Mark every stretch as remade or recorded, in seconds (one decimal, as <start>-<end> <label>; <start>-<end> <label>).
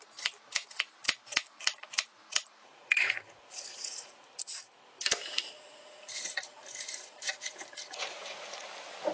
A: 0.0-1.0 recorded; 1.0-4.3 remade; 4.3-5.3 recorded; 5.3-8.7 remade; 8.7-9.1 recorded